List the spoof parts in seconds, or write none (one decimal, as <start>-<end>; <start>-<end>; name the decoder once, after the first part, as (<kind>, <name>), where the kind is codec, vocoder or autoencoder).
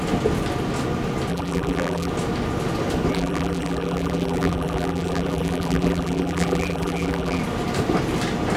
1.3-2.1 (vocoder, BigVGAN v2); 3.1-7.4